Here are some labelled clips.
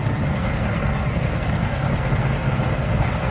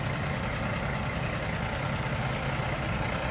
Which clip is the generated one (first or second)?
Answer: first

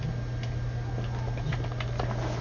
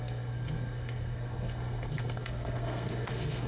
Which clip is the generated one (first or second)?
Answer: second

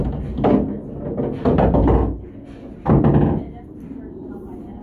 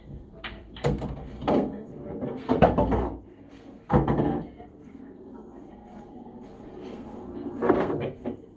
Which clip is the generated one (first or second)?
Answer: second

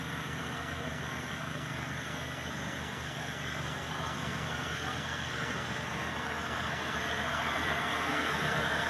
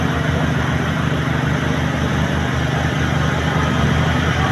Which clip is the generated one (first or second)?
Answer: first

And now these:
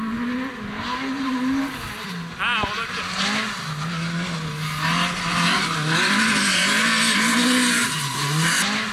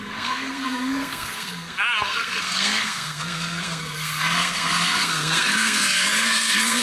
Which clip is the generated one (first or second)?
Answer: second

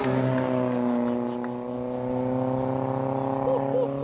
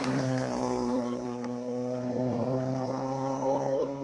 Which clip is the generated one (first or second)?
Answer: second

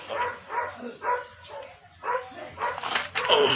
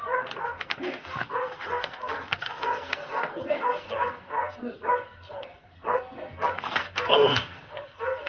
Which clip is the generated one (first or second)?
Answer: second